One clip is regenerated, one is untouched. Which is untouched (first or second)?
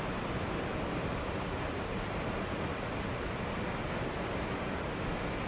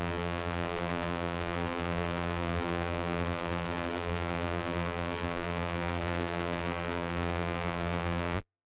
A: first